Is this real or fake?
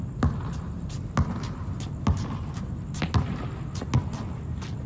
real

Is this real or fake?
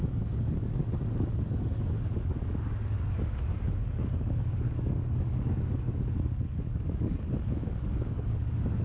fake